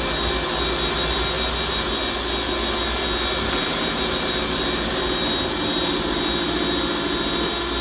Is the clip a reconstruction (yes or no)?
no